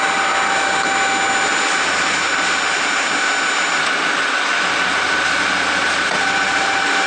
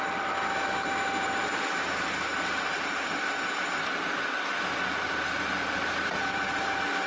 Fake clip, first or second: second